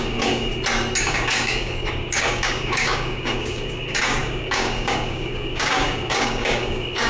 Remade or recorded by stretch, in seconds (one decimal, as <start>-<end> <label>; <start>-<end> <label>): 0.0-0.5 remade; 0.5-1.0 recorded; 1.0-7.1 remade